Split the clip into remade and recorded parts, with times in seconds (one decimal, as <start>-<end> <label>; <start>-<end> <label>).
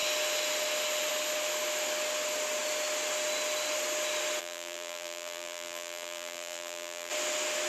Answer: 0.0-4.4 recorded; 4.4-7.1 remade; 7.1-7.7 recorded